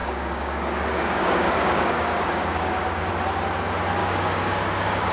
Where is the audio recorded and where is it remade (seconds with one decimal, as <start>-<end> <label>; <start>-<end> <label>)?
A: 0.0-3.1 remade; 3.1-4.0 recorded; 4.0-5.1 remade